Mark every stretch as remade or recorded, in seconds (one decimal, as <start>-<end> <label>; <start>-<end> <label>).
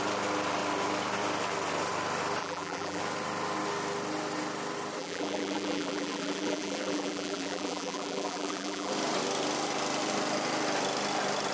0.0-2.4 recorded; 2.4-3.0 remade; 3.0-5.0 recorded; 5.0-8.9 remade; 8.9-11.5 recorded